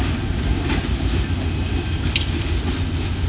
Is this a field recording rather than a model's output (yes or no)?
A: yes